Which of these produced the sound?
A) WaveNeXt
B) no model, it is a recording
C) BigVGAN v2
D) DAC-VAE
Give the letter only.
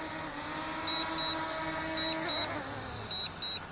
B